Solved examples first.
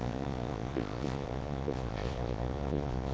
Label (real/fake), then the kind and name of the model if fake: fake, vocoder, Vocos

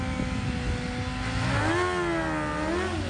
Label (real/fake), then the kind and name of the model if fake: real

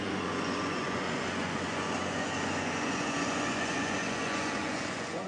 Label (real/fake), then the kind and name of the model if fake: fake, vocoder, Vocos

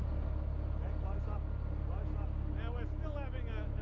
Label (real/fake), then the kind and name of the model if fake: real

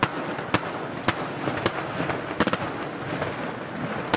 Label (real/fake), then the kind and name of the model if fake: real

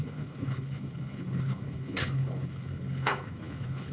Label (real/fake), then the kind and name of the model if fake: fake, codec, HILCodec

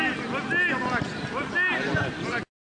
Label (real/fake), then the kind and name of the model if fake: real